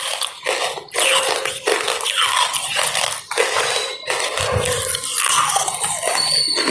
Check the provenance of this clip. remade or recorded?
recorded